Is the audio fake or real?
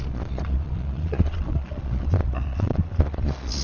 fake